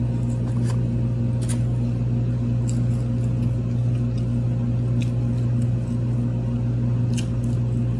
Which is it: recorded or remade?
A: recorded